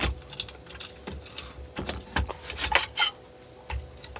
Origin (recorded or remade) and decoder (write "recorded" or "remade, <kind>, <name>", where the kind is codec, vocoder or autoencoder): recorded